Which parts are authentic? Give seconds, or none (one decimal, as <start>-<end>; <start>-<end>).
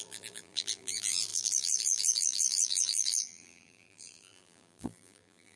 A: none